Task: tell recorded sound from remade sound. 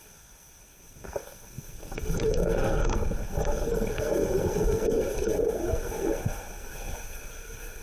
remade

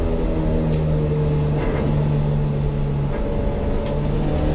recorded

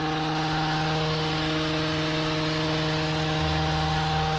recorded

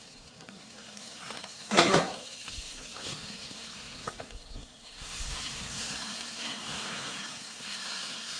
remade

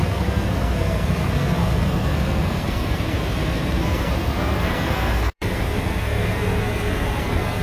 remade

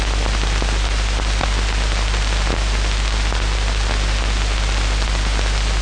recorded